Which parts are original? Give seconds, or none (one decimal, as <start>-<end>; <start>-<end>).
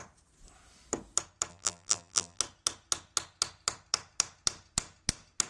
0.0-1.5; 2.4-5.5